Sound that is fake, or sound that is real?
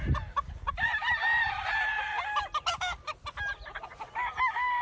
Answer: real